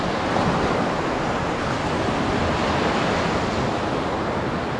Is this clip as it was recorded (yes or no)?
yes